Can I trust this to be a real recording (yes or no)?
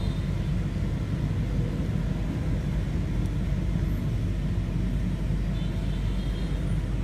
yes